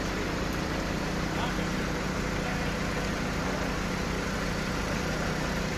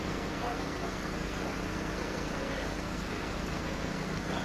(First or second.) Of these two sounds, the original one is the first